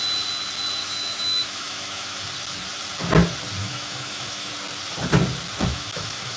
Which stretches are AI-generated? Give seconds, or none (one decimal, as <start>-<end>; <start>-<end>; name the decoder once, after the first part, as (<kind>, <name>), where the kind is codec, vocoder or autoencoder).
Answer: 0.8-2.2 (autoencoder, DAC-VAE); 3.6-4.5; 5.7-6.4